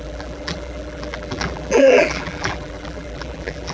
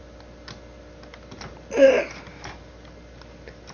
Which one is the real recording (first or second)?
second